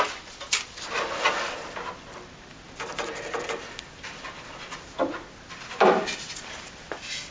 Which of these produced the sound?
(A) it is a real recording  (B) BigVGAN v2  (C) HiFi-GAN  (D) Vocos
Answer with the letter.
A